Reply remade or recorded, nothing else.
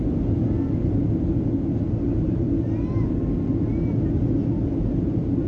recorded